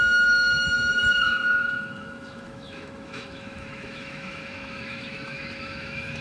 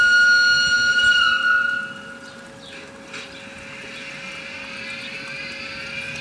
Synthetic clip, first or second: first